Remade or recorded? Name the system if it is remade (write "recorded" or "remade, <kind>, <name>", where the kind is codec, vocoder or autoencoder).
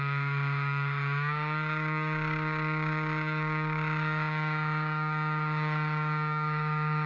remade, codec, DAC